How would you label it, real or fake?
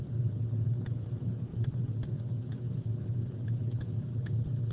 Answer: real